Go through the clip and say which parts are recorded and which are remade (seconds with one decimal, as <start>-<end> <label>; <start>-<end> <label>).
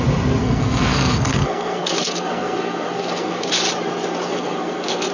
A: 0.0-0.4 recorded; 0.4-3.5 remade; 3.5-4.1 recorded; 4.1-5.1 remade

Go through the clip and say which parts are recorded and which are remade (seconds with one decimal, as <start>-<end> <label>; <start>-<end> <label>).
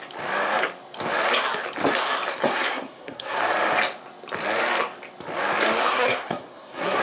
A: 0.0-2.3 recorded; 2.3-3.4 remade; 3.4-5.8 recorded; 5.8-7.0 remade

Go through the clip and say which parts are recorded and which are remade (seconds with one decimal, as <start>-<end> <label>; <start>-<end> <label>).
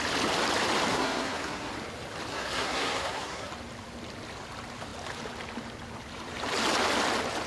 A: 0.0-0.9 recorded; 0.9-1.7 remade; 1.7-2.3 recorded; 2.3-3.5 remade; 3.5-7.5 recorded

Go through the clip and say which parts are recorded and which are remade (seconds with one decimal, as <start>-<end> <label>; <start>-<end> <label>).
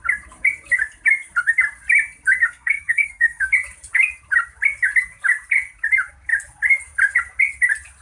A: 0.0-2.4 recorded; 2.4-3.5 remade; 3.5-8.0 recorded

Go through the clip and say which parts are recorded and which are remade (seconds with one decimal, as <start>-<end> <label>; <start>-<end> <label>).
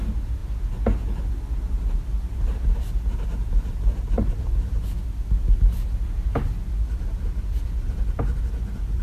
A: 0.0-9.0 recorded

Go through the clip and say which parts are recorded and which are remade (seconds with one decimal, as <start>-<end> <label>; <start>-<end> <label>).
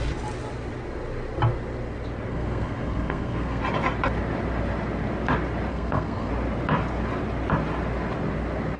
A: 0.0-2.3 recorded; 2.3-3.6 remade; 3.6-5.7 recorded; 5.7-6.3 remade; 6.3-8.8 recorded